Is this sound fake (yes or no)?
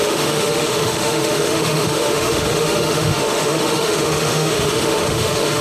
yes